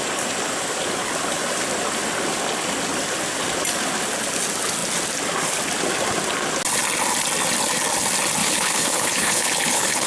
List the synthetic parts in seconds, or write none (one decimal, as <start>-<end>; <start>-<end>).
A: 8.4-10.1